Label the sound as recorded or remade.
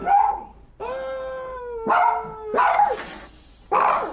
recorded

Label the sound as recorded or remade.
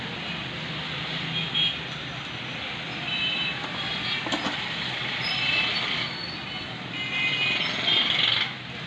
recorded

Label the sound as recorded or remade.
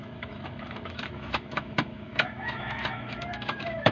remade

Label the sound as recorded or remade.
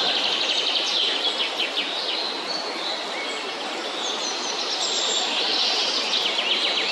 recorded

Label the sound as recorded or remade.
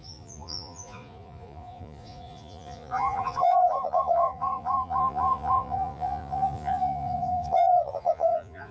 remade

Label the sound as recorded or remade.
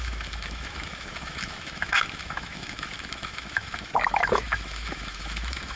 remade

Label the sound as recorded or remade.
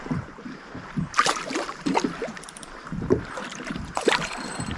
remade